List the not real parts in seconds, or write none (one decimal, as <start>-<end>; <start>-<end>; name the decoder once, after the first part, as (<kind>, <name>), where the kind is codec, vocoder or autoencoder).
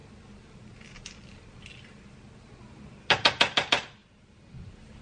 4.0-5.0 (vocoder, BigVGAN v2)